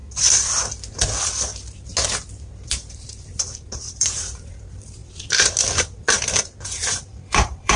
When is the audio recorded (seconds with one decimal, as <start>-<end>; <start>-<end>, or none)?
0.0-2.7; 5.0-6.6